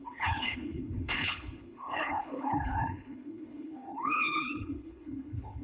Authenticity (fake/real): fake